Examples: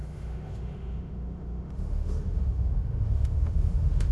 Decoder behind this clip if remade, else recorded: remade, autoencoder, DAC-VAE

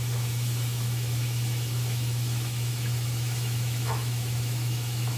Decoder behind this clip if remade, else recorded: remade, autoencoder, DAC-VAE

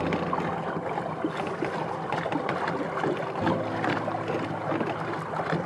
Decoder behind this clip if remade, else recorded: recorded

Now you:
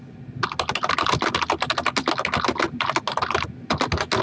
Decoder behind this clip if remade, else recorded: recorded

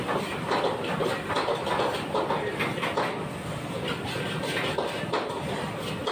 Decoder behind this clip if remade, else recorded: recorded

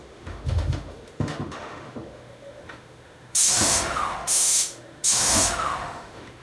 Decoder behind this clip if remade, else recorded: remade, autoencoder, DAC-VAE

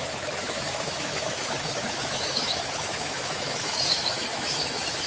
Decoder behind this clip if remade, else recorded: remade, autoencoder, DAC-VAE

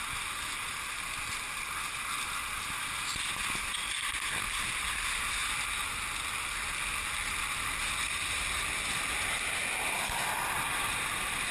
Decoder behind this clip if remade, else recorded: recorded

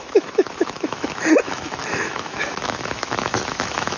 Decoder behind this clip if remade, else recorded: remade, autoencoder, DAC-VAE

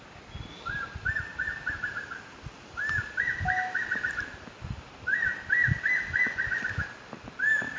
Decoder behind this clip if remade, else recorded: recorded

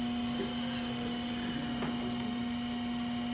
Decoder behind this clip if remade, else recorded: recorded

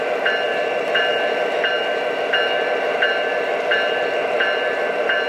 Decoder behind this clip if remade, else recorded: recorded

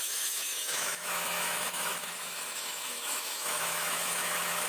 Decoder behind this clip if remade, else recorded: remade, autoencoder, DAC-VAE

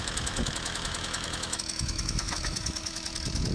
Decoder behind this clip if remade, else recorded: remade, autoencoder, DAC-VAE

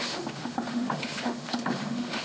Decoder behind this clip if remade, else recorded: remade, autoencoder, DAC-VAE